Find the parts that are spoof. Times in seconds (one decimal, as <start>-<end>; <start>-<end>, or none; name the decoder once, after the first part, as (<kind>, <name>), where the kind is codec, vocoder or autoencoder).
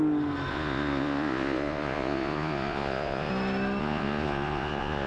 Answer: 0.5-3.3 (vocoder, Vocos); 3.8-5.1